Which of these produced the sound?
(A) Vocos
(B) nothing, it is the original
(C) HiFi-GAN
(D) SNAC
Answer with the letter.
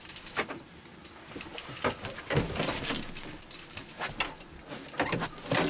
B